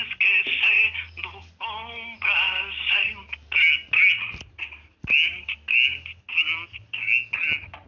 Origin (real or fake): real